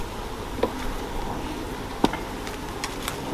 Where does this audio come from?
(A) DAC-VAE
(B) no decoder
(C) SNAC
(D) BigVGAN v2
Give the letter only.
B